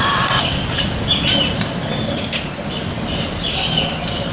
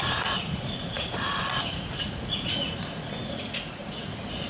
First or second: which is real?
first